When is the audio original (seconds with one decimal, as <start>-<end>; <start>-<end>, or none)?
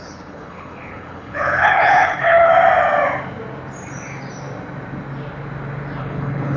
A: 2.5-6.0